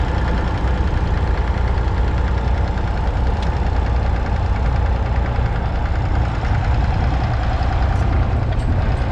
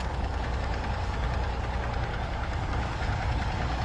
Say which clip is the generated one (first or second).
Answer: second